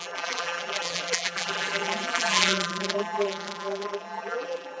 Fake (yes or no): yes